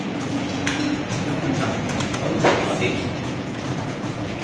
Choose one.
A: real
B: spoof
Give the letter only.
B